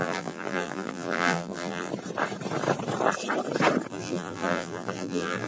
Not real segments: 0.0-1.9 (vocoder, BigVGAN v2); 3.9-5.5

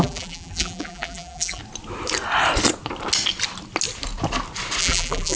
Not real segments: 0.0-1.6 (vocoder, BigVGAN v2); 4.8-5.4

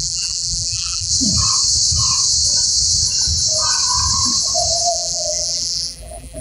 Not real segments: 0.0-1.1 (vocoder, BigVGAN v2); 4.9-6.4

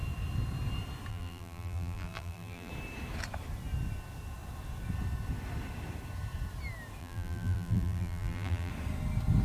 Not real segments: 1.1-2.7 (vocoder, BigVGAN v2); 7.0-8.7

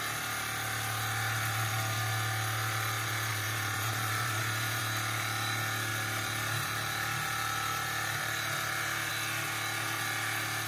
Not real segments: 3.3-4.8 (vocoder, BigVGAN v2); 5.9-9.1

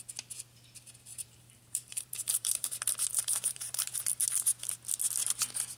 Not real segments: 1.1-2.7 (vocoder, BigVGAN v2); 3.1-4.0